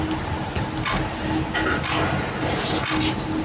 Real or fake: real